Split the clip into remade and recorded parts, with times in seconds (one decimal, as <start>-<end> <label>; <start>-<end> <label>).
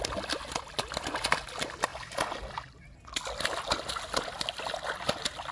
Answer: 0.0-5.5 recorded